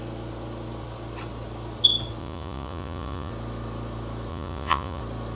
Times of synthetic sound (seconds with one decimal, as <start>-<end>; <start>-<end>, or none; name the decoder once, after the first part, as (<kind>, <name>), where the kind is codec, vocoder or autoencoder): 2.2-3.3 (vocoder, Vocos); 4.3-5.0